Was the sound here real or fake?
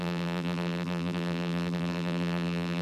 fake